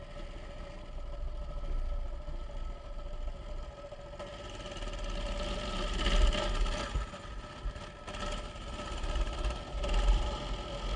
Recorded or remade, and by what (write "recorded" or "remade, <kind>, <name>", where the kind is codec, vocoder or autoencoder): recorded